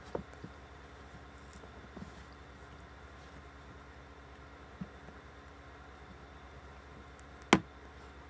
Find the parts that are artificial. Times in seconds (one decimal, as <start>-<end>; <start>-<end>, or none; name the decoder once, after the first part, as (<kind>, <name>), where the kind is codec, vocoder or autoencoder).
none